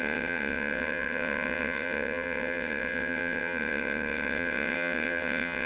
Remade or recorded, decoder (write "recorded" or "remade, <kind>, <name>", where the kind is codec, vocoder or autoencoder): remade, vocoder, WaveNeXt